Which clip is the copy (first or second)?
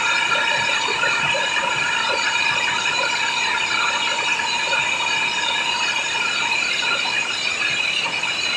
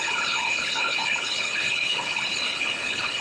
second